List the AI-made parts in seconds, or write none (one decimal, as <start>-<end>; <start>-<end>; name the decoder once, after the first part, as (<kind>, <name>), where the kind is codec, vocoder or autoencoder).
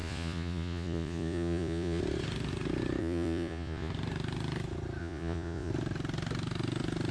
0.0-2.0 (vocoder, Vocos); 3.0-3.9; 5.0-5.7